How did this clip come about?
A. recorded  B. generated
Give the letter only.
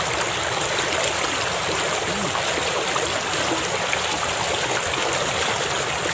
B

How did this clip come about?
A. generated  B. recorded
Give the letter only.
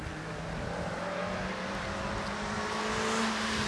B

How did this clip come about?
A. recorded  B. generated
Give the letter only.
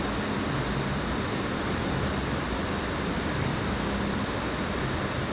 A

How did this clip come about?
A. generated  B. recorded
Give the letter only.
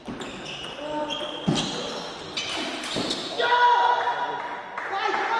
B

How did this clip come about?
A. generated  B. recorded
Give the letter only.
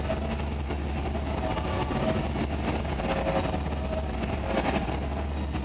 B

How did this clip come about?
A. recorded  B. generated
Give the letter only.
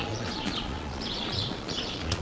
B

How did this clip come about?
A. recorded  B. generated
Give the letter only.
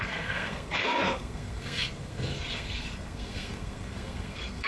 B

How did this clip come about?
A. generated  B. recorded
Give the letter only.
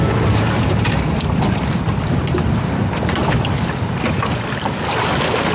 B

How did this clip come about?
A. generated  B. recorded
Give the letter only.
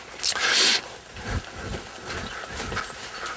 B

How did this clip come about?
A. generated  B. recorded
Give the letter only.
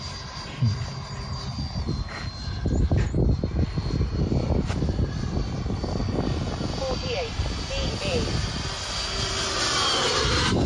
B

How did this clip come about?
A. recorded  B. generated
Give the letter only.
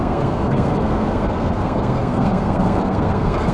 B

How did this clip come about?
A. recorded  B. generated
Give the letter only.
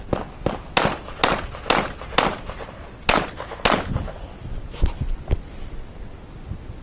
A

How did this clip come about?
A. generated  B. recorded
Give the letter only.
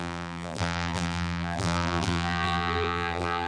A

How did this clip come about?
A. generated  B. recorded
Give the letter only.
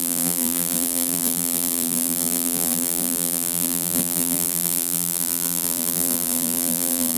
A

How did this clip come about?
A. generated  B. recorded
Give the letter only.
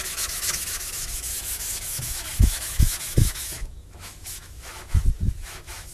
A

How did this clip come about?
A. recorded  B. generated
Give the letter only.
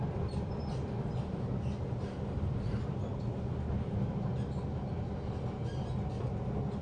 A